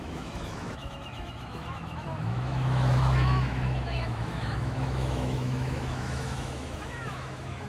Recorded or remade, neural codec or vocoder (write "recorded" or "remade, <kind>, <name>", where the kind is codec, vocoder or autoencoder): remade, autoencoder, DAC-VAE